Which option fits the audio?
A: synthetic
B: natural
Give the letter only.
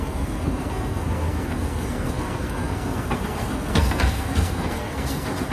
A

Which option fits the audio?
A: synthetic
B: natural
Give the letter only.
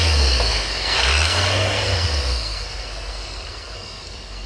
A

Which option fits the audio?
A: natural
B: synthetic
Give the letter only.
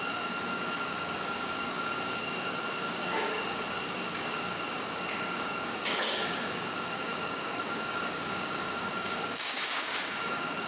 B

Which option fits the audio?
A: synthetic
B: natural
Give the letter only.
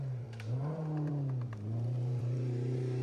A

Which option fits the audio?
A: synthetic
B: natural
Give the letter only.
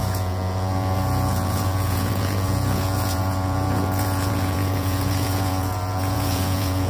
A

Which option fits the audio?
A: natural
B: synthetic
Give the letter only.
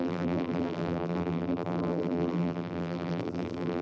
B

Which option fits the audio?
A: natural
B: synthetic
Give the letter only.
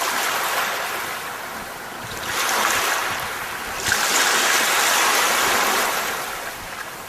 A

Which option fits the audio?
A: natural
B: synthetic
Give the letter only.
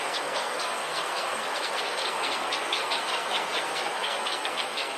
B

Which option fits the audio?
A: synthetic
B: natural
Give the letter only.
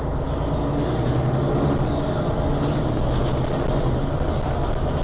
B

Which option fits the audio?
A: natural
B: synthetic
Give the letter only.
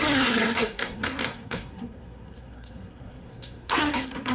B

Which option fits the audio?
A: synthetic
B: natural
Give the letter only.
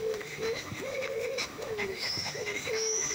A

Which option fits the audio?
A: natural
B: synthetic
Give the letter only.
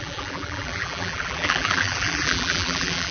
B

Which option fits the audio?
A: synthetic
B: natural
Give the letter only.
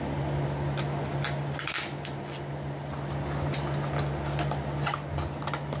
B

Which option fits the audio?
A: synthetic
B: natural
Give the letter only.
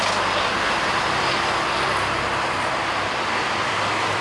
B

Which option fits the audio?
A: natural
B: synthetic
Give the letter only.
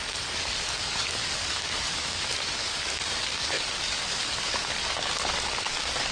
B